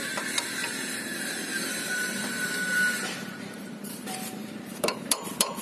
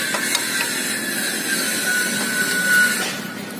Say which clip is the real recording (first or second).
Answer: second